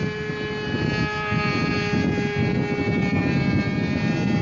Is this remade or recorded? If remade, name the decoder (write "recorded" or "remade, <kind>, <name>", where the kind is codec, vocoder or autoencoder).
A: recorded